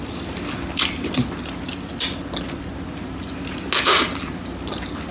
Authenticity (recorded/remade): recorded